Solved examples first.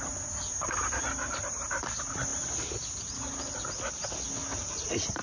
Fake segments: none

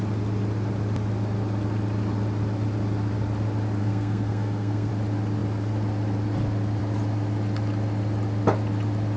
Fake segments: 3.8-4.9 (codec, SNAC)

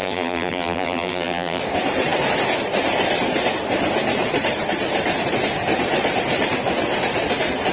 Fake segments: 0.0-1.6 (vocoder, BigVGAN v2)